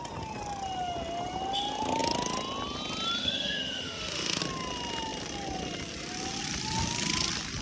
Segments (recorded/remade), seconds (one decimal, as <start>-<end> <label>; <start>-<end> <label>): 0.0-3.2 recorded; 3.2-4.4 remade; 4.4-7.6 recorded

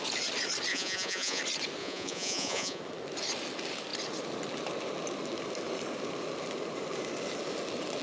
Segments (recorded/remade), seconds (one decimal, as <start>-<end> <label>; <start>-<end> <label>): 0.0-0.7 recorded; 0.7-1.4 remade; 1.4-1.8 recorded; 1.8-2.8 remade; 2.8-8.0 recorded

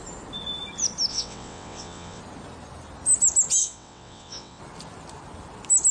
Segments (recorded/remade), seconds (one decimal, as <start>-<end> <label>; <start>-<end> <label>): 0.0-1.1 recorded; 1.1-2.2 remade; 2.2-3.6 recorded; 3.6-4.6 remade; 4.6-5.9 recorded

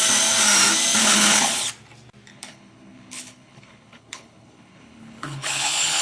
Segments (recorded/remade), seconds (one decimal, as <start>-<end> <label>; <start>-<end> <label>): 0.0-1.0 recorded; 1.0-1.7 remade; 1.7-2.3 recorded; 2.3-6.0 remade